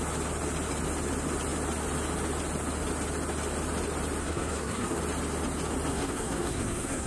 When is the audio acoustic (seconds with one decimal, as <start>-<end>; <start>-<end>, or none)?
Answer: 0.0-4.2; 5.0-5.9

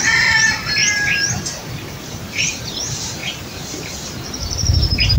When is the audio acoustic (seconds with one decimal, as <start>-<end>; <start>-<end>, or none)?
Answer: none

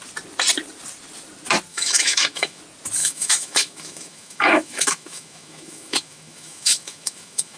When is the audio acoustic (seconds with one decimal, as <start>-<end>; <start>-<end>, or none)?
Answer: 0.0-1.7; 2.6-3.0

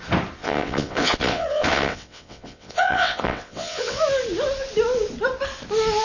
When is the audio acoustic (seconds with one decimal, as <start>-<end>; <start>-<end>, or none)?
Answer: 0.0-0.4; 4.0-6.0